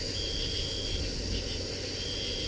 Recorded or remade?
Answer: recorded